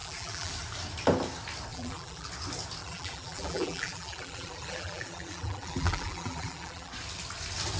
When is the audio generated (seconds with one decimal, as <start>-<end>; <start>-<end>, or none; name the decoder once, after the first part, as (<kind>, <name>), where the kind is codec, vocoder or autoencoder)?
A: 0.0-0.5 (vocoder, BigVGAN v2); 1.7-2.3; 2.8-6.9